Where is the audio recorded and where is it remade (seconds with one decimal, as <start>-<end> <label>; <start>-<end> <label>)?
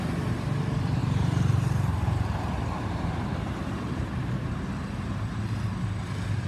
0.0-1.0 recorded; 1.0-4.7 remade; 4.7-6.5 recorded